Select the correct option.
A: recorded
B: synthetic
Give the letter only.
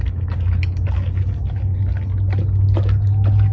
A